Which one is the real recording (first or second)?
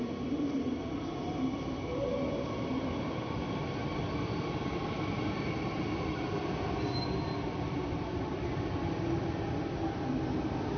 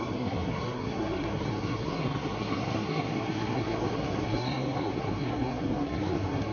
first